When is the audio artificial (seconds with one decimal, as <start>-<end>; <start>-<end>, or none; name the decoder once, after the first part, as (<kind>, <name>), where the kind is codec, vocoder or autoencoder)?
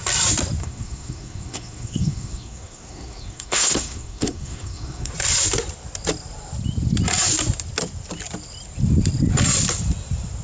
0.6-5.1 (codec, SNAC)